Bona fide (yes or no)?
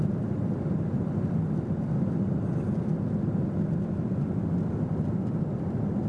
yes